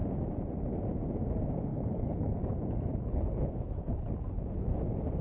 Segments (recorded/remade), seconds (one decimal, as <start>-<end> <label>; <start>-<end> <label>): 0.0-1.7 recorded; 1.7-4.8 remade; 4.8-5.2 recorded